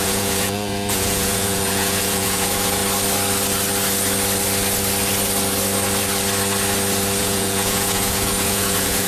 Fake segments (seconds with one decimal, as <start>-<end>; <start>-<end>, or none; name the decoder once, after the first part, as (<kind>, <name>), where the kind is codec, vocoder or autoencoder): 0.0-2.8 (vocoder, Vocos); 7.2-9.1